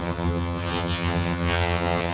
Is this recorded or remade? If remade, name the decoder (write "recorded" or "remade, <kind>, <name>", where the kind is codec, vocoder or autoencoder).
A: remade, vocoder, HiFi-GAN